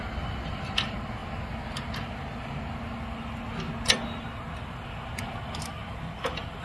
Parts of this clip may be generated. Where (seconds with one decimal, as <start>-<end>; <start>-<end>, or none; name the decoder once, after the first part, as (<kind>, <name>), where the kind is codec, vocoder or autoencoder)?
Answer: none